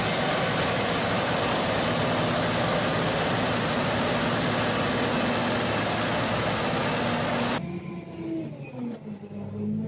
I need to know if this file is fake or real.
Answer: real